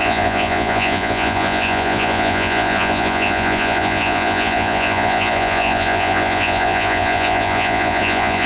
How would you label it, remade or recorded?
remade